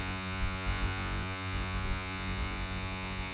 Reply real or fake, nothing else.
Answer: fake